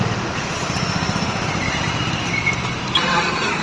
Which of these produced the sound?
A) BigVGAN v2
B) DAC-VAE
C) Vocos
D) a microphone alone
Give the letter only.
A